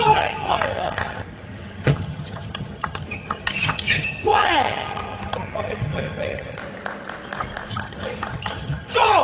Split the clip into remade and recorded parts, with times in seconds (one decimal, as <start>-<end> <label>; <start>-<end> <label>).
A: 0.0-6.6 remade; 6.6-7.7 recorded; 7.7-9.2 remade